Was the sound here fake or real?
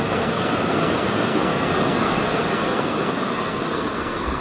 fake